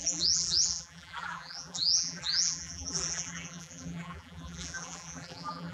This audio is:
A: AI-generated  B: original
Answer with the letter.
A